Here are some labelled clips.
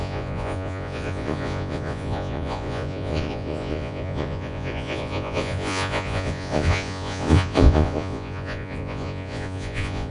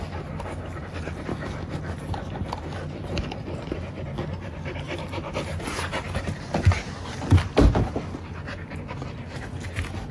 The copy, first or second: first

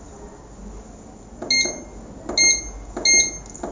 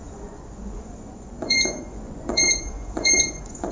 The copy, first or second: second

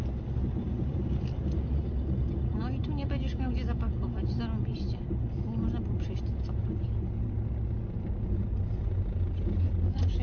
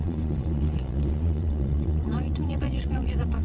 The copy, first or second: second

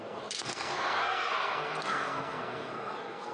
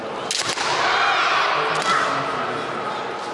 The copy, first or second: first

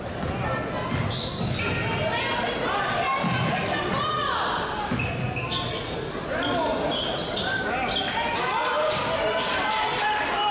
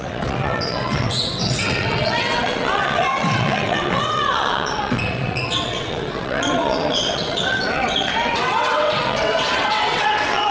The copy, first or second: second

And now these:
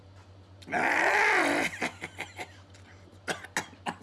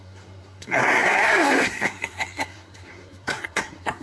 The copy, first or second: second